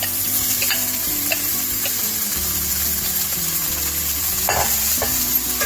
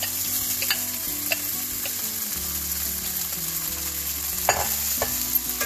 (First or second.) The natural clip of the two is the second